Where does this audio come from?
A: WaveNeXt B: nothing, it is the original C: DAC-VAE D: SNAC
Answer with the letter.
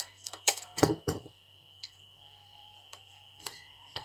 D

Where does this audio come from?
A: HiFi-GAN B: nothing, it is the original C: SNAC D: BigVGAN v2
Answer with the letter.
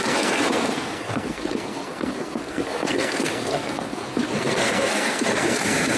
C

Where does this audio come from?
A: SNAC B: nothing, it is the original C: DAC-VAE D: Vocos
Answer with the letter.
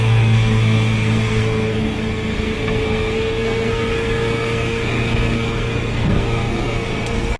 A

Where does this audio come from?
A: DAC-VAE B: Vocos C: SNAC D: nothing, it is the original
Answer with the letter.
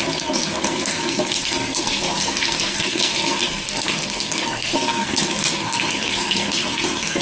C